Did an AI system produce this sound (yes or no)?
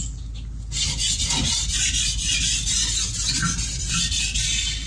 no